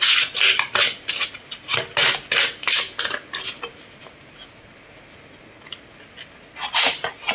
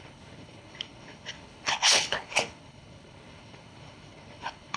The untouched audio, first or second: first